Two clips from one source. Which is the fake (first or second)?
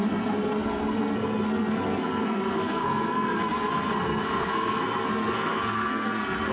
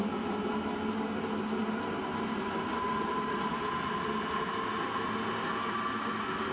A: first